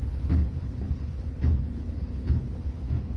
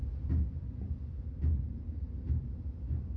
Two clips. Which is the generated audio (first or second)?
first